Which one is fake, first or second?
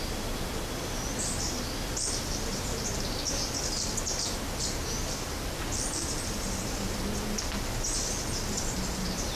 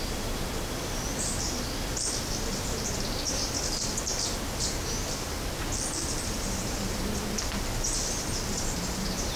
second